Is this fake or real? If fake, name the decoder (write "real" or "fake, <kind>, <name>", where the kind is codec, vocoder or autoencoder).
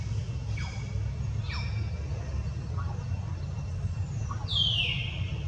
real